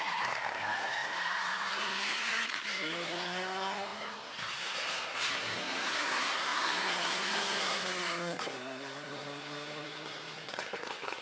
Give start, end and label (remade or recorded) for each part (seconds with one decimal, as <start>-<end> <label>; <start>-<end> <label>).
0.0-11.2 remade